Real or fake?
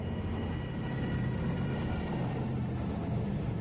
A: fake